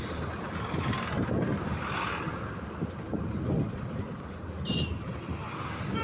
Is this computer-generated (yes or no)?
no